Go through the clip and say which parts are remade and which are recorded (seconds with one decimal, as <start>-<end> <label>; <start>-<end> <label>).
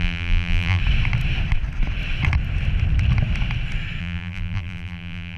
0.0-0.8 remade; 0.8-4.0 recorded; 4.0-5.4 remade